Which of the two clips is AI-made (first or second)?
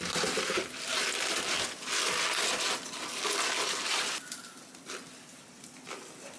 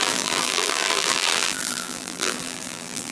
second